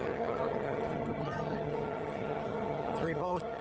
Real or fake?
fake